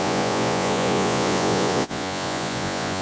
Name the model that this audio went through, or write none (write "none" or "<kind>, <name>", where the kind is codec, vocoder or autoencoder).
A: vocoder, Vocos